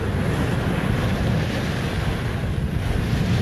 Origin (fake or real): real